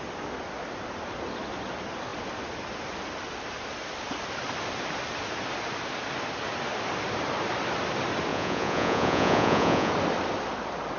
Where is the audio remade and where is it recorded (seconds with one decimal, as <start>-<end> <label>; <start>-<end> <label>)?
0.0-8.3 recorded; 8.3-9.9 remade; 9.9-11.0 recorded